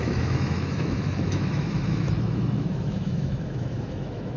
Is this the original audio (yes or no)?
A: no